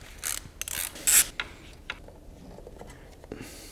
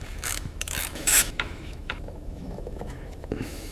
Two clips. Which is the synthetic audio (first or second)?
second